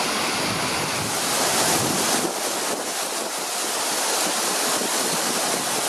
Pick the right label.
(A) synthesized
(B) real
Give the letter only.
B